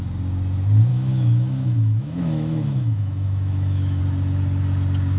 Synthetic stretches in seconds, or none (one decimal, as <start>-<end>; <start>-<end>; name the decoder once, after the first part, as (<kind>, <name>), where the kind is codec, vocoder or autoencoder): 0.9-4.0 (autoencoder, DAC-VAE)